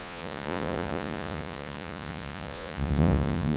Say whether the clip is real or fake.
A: fake